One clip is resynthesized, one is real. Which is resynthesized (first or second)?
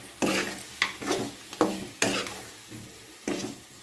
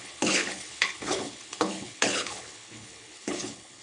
second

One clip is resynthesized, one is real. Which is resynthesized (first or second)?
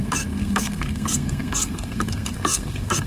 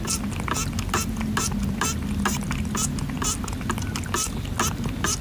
first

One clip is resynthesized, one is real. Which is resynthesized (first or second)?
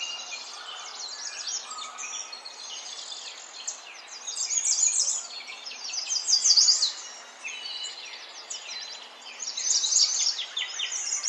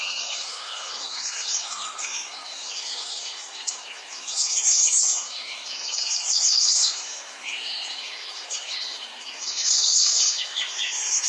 second